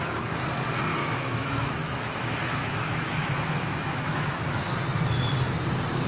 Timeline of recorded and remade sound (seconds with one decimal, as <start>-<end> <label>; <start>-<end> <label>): 0.0-1.0 recorded; 1.0-4.7 remade; 4.7-6.1 recorded